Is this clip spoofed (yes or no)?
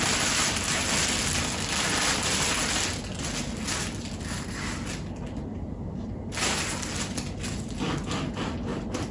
no